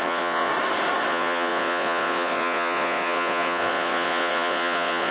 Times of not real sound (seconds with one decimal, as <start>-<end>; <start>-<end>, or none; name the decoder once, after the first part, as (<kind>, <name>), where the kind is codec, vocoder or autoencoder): 0.0-0.5 (vocoder, Vocos); 1.1-5.1